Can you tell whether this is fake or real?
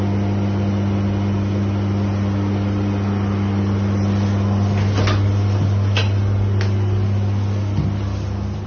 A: real